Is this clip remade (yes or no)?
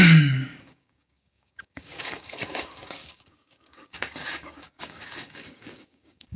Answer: yes